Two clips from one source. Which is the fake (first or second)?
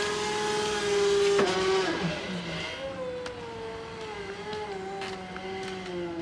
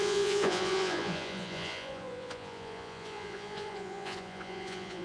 second